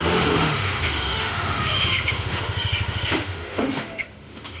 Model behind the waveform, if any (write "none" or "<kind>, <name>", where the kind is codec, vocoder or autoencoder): autoencoder, DAC-VAE